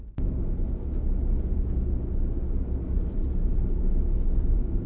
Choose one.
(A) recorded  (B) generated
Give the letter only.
A